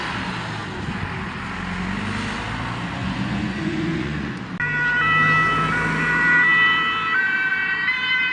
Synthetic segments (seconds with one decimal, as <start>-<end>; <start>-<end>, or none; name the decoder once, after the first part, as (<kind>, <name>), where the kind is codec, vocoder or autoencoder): 3.0-4.4 (vocoder, Vocos)